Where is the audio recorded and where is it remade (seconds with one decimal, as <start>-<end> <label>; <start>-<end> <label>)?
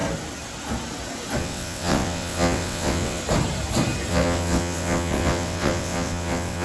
0.0-1.4 recorded; 1.4-3.2 remade; 3.2-4.1 recorded; 4.1-6.6 remade